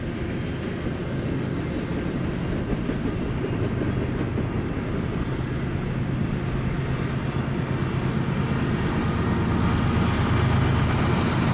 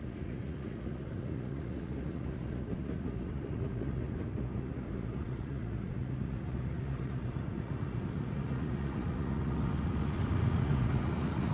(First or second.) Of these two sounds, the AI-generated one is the second